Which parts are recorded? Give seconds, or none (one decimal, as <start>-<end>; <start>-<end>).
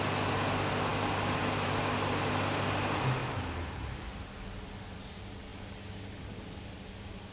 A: 0.0-3.2; 4.3-7.3